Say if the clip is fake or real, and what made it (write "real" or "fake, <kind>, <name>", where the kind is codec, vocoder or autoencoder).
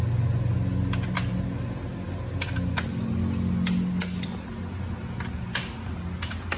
real